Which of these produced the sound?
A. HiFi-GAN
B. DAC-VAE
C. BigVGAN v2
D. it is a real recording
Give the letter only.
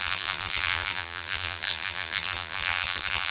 C